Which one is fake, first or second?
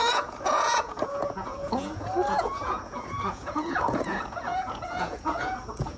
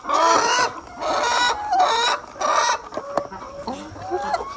first